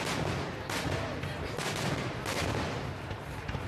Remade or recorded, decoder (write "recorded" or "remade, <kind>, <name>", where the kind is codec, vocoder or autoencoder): recorded